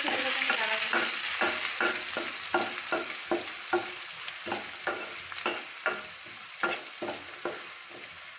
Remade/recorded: recorded